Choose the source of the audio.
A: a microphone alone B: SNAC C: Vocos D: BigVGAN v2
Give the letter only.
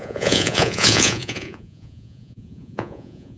C